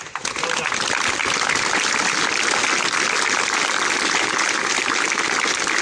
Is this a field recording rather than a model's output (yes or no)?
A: yes